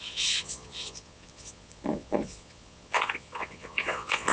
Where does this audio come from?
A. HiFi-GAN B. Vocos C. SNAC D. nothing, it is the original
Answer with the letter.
B